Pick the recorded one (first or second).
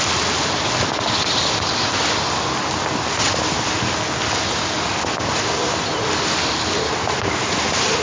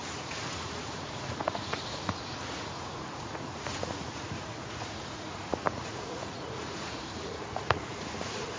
first